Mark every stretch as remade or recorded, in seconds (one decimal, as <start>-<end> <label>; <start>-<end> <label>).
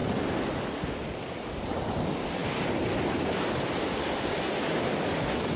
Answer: 0.0-5.6 recorded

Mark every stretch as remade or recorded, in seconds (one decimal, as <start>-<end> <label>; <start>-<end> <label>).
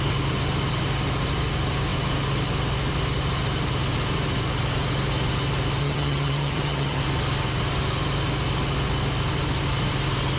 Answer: 0.0-5.8 recorded; 5.8-7.0 remade; 7.0-10.4 recorded